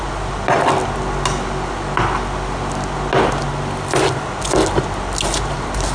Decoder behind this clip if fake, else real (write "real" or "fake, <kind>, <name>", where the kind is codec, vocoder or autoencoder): real